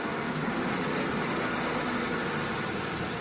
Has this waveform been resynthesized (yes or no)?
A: no